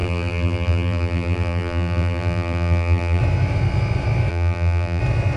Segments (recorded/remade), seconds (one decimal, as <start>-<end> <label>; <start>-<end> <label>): 0.0-3.2 remade; 3.2-4.3 recorded; 4.3-5.0 remade; 5.0-5.4 recorded